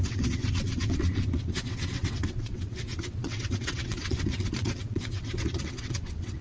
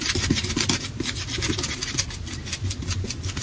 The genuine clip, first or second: second